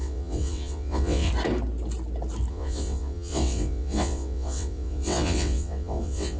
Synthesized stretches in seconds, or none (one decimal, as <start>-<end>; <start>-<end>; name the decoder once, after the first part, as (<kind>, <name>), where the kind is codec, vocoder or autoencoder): 0.0-1.3 (vocoder, WaveNeXt); 2.5-6.4

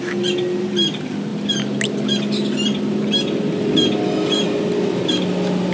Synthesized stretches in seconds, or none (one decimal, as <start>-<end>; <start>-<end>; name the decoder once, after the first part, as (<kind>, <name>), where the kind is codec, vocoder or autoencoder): none

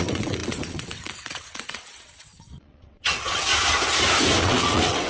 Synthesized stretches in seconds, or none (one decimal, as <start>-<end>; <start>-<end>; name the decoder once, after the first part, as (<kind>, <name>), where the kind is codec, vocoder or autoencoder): 0.0-3.5 (vocoder, WaveNeXt); 4.4-5.1